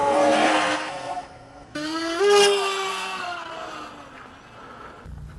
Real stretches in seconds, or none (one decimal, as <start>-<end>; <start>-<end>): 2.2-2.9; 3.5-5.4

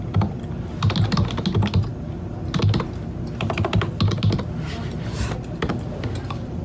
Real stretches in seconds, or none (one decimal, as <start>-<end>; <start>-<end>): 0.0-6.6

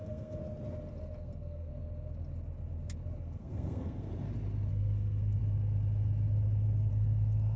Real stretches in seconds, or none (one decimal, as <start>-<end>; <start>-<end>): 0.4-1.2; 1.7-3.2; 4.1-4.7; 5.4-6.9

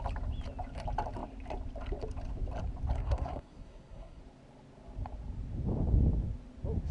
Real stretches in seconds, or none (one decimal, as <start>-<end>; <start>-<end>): 0.0-3.0; 4.2-6.9

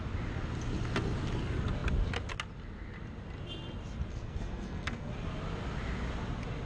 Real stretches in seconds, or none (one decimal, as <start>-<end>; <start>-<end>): 0.0-4.1; 5.1-6.7

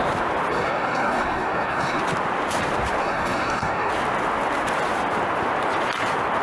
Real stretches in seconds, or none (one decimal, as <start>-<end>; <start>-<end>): 0.0-0.5; 2.0-3.0; 3.9-6.4

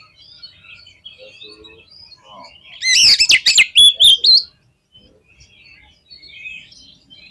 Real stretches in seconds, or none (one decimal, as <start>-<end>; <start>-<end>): 0.0-7.3